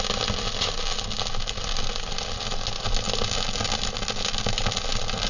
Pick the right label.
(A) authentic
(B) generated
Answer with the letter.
A